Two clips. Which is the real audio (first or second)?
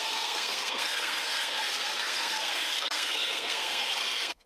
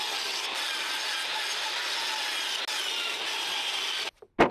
second